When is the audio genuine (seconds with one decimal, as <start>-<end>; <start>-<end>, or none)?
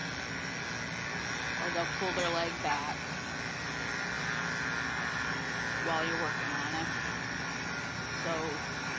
0.0-9.0